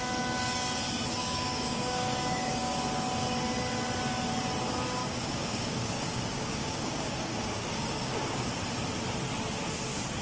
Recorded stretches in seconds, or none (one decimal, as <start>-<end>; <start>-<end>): 0.0-1.2; 2.8-5.0; 8.5-10.2